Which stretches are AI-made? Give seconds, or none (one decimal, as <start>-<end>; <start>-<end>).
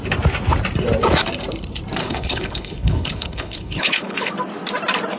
2.0-4.3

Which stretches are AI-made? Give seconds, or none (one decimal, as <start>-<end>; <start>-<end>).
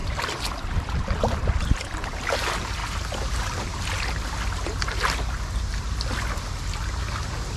0.0-0.7; 1.4-1.9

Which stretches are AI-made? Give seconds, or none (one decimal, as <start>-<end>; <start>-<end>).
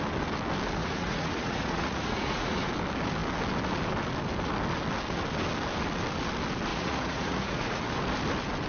0.8-2.7; 6.7-7.8